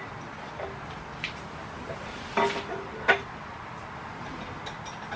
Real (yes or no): yes